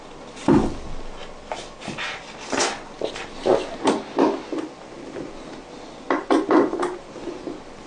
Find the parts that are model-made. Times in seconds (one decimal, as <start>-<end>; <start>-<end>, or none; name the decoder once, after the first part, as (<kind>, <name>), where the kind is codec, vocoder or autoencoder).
none